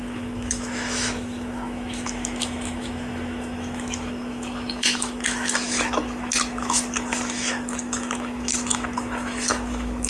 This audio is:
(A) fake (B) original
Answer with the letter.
A